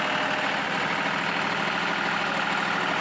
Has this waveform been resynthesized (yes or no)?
no